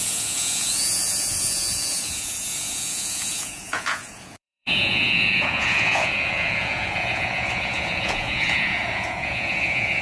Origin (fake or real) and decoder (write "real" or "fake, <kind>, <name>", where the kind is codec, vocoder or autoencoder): fake, vocoder, Vocos